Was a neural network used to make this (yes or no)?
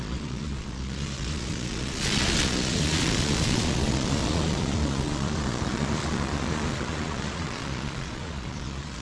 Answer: yes